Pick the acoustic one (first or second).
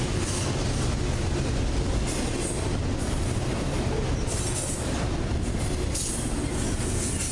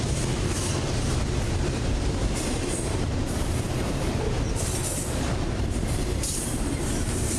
first